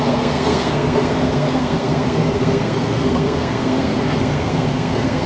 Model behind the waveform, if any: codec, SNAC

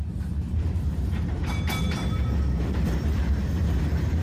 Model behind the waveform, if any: vocoder, BigVGAN v2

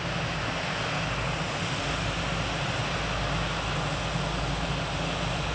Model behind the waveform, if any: none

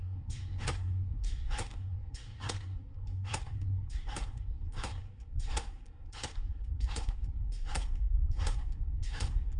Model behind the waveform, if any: codec, SNAC